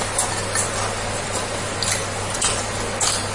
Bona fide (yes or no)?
yes